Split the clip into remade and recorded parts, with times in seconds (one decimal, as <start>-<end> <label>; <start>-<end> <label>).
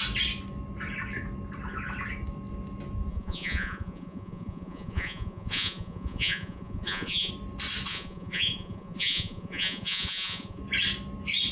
0.0-3.1 recorded; 3.1-7.3 remade; 7.3-7.9 recorded; 7.9-10.6 remade; 10.6-11.5 recorded